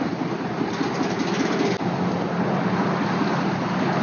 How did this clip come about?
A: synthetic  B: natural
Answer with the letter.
B